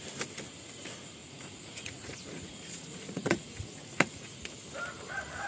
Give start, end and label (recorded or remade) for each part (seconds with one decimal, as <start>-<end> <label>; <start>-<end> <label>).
0.0-1.2 recorded; 1.2-4.5 remade; 4.5-5.5 recorded